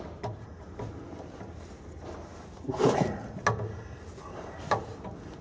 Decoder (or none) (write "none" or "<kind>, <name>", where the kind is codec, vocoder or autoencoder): none